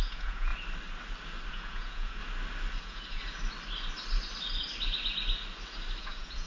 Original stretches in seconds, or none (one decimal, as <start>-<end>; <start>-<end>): 0.5-1.5; 2.2-2.8; 3.2-6.0